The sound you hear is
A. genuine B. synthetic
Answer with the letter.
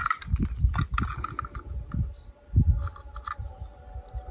A